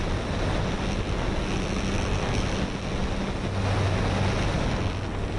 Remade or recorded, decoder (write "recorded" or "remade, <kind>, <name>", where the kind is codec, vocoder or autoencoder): recorded